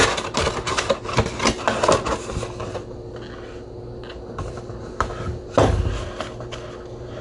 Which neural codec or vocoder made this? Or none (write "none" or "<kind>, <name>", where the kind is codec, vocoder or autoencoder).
none